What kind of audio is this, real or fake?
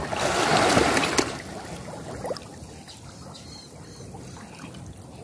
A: real